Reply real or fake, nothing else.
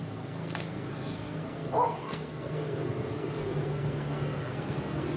fake